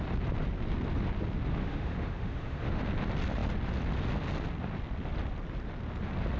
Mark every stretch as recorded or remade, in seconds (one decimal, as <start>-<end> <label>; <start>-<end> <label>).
0.0-1.6 recorded; 1.6-2.8 remade; 2.8-6.4 recorded